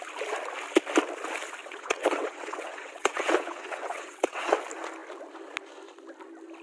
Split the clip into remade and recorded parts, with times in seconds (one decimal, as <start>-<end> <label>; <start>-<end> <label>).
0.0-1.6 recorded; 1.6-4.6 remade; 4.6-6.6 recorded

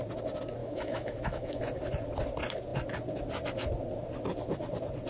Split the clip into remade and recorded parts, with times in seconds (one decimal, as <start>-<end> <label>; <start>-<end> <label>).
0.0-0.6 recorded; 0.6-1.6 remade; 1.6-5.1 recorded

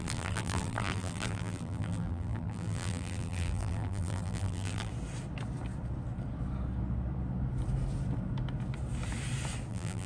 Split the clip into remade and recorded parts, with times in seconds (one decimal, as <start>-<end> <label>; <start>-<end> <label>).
0.0-4.9 remade; 4.9-9.7 recorded; 9.7-10.1 remade

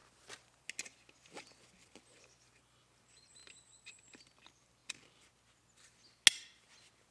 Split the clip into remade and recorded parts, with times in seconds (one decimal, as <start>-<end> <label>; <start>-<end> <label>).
0.0-7.1 recorded

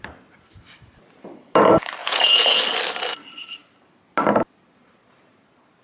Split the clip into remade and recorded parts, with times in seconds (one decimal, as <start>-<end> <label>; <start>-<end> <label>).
0.0-2.0 recorded; 2.0-2.6 remade; 2.6-5.8 recorded